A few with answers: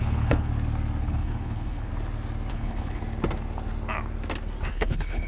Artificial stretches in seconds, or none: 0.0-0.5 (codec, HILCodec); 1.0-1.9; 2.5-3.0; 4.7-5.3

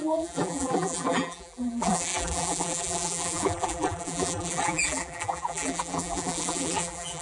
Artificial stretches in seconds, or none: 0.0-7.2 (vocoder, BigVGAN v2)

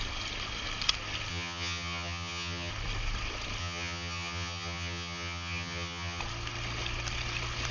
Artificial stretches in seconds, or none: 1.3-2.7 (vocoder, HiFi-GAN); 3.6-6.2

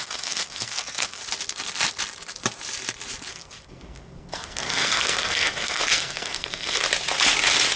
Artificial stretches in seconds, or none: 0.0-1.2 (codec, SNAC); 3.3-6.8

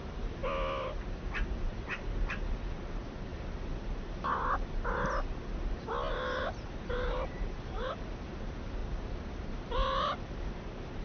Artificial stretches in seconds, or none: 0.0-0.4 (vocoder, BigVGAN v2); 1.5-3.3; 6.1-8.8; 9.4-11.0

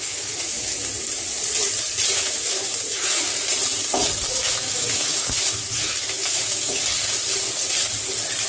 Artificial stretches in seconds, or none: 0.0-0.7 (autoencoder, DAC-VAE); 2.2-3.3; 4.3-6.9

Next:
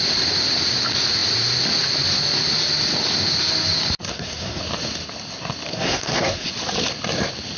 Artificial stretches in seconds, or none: 4.1-4.6 (codec, SNAC); 5.7-6.5

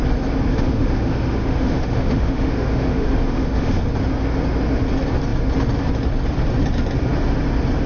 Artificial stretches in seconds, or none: 0.5-3.8 (autoencoder, DAC-VAE)